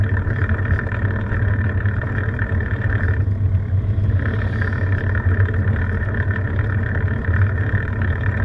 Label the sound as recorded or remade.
recorded